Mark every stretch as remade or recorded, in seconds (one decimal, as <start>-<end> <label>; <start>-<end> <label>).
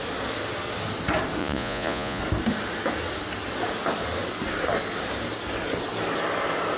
0.0-1.4 recorded; 1.4-2.2 remade; 2.2-6.8 recorded